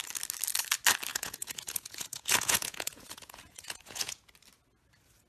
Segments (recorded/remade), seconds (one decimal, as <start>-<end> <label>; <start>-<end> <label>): 0.0-1.1 recorded; 1.1-4.3 remade; 4.3-5.3 recorded